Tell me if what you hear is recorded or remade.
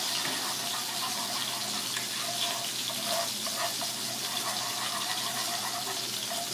recorded